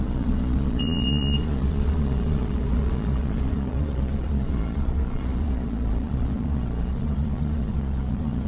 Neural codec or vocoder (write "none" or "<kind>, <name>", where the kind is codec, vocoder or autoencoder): vocoder, Vocos